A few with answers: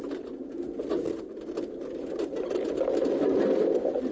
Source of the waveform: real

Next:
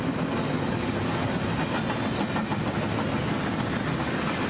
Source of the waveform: real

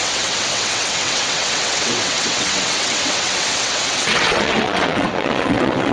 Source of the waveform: fake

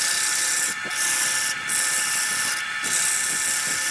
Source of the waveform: real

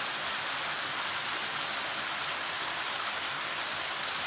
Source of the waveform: real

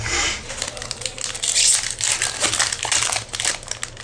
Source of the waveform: real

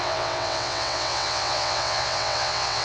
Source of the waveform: fake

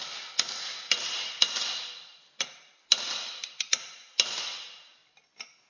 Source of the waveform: real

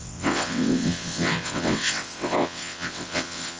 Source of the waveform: fake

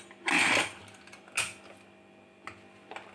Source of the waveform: real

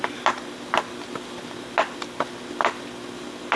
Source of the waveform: real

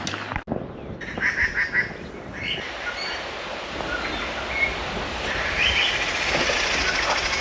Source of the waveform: real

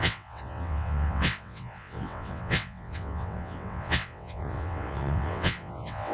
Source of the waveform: fake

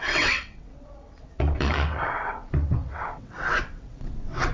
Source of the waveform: fake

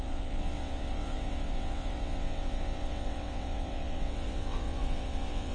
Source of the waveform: fake